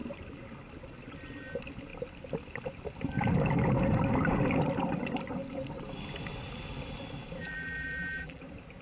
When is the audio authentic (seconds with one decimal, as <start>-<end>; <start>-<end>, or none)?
0.0-7.4; 8.4-8.8